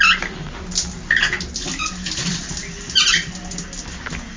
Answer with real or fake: real